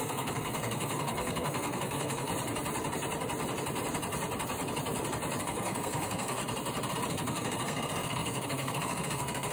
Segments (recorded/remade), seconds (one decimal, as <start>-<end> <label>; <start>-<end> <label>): 0.0-2.3 remade; 2.3-5.4 recorded; 5.4-6.4 remade; 6.4-7.1 recorded; 7.1-9.5 remade